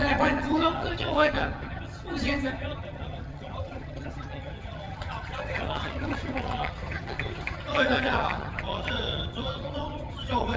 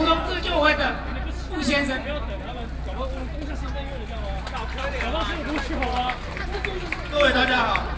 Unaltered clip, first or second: second